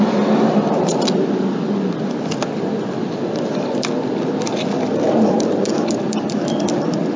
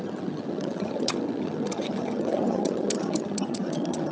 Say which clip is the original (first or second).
first